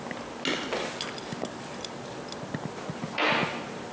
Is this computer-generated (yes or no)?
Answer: no